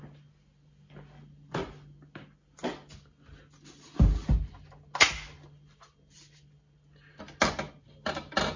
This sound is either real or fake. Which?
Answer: real